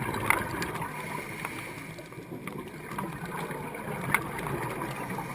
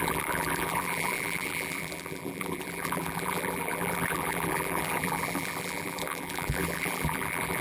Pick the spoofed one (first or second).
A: second